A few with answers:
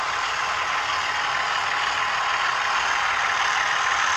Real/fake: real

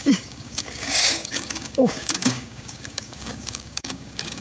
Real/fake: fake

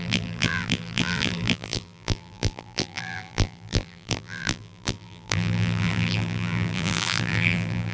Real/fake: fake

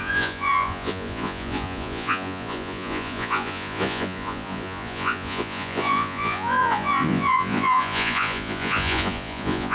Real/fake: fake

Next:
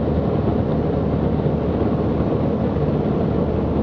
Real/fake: real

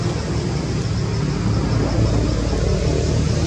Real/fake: real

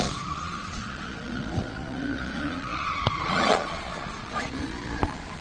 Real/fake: fake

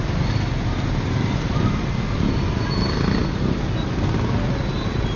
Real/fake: real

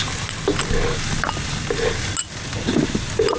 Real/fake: real